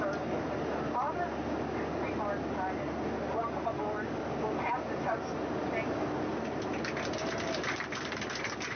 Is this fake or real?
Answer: real